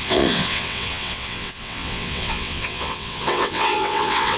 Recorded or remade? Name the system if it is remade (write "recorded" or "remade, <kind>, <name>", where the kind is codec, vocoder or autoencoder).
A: remade, vocoder, WaveNeXt